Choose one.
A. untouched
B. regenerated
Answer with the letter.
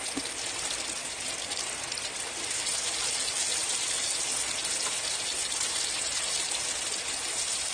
A